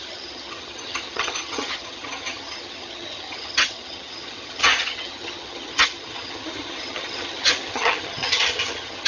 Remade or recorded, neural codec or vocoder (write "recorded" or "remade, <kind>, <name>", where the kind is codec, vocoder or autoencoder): remade, vocoder, HiFi-GAN